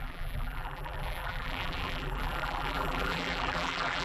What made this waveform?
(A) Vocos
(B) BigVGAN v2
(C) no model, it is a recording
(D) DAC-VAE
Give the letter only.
B